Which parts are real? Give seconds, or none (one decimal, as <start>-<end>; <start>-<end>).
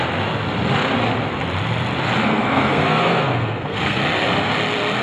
0.0-2.2; 4.0-5.0